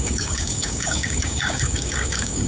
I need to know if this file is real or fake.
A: fake